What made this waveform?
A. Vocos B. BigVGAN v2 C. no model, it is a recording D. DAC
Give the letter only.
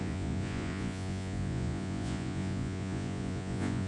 A